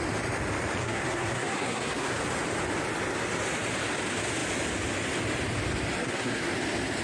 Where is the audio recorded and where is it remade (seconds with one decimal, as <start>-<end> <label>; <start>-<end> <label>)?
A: 0.0-0.8 recorded; 0.8-2.1 remade; 2.1-6.0 recorded; 6.0-6.5 remade; 6.5-7.0 recorded